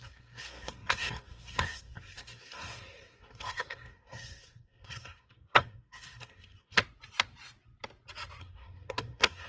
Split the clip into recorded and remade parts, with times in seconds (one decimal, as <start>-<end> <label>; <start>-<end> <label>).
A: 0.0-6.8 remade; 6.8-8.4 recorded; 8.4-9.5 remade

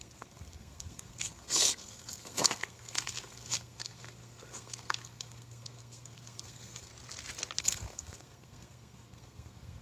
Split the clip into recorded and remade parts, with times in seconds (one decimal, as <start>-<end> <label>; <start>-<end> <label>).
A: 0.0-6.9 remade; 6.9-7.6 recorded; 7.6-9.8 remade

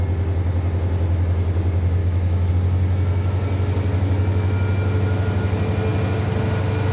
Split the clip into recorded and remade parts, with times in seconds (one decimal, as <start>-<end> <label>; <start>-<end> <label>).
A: 0.0-2.0 recorded; 2.0-2.5 remade; 2.5-6.9 recorded